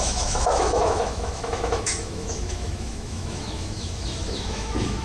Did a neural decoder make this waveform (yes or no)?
yes